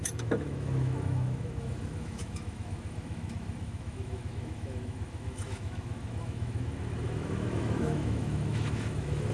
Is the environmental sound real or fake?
fake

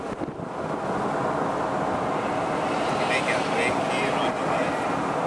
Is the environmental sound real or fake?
real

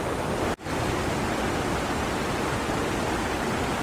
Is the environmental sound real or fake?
real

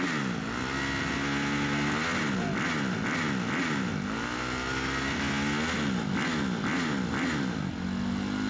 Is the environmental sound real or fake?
real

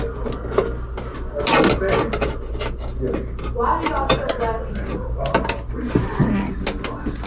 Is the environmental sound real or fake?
real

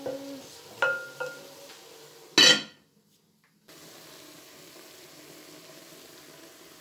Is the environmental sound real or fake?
real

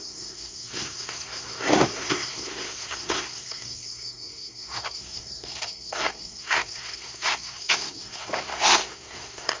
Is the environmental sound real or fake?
fake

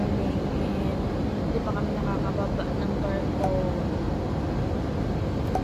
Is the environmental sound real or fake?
real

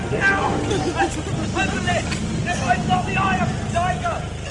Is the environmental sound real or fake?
real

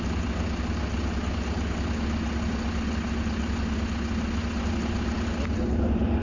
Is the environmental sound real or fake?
real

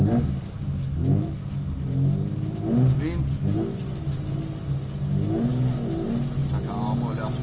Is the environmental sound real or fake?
real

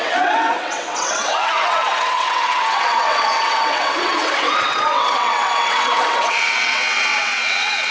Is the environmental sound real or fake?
fake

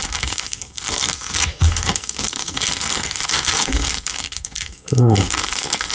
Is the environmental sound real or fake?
fake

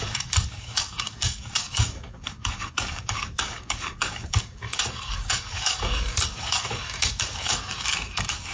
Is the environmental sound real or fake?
fake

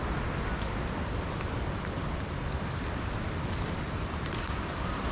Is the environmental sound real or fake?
real